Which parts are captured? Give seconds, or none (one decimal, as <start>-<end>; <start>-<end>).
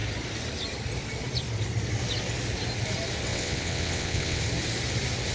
0.0-3.3; 4.4-5.3